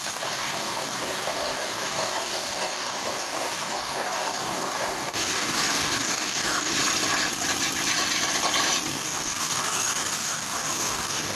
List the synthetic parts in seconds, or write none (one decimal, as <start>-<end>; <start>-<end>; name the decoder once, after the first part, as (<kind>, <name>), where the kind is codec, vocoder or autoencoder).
0.0-6.7 (codec, DAC); 8.9-11.4